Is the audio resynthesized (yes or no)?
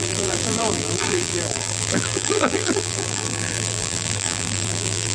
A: yes